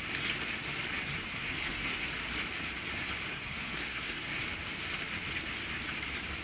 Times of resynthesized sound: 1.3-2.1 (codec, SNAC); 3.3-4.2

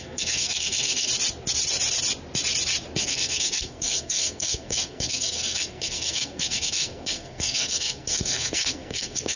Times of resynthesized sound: 0.0-1.1 (codec, SNAC); 3.0-9.4

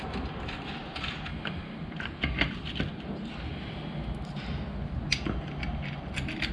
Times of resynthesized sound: none